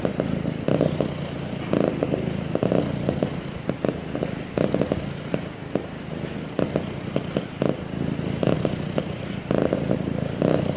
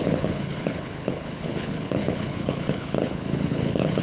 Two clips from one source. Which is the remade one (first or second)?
second